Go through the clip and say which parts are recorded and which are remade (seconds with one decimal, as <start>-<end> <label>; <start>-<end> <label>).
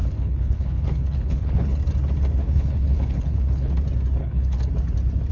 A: 0.0-1.8 remade; 1.8-2.4 recorded; 2.4-3.7 remade; 3.7-4.2 recorded; 4.2-4.7 remade; 4.7-5.3 recorded